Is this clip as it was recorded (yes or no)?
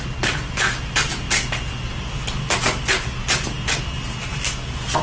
yes